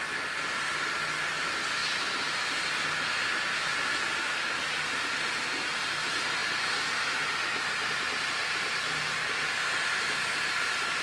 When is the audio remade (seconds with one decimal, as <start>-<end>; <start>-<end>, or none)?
none